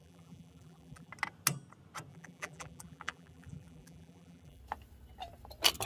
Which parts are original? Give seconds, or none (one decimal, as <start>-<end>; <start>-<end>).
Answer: 1.1-2.1; 4.6-5.9